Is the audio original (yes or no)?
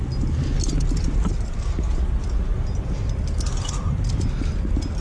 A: yes